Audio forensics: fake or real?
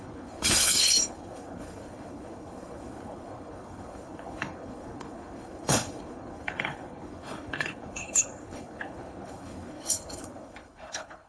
fake